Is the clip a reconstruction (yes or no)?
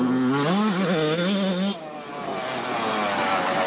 no